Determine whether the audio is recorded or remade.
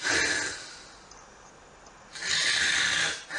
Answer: recorded